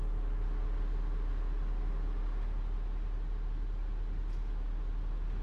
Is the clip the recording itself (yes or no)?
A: yes